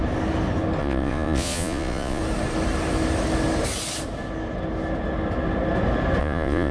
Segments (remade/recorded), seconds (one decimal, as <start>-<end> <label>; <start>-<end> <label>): 0.0-0.8 recorded; 0.8-2.2 remade; 2.2-6.2 recorded; 6.2-6.7 remade